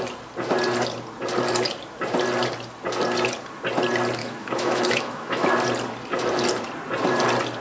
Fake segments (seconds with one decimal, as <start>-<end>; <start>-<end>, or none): 4.2-5.5

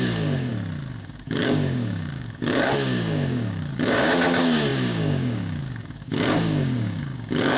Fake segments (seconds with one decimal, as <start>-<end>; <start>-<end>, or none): 0.0-0.5; 1.0-7.6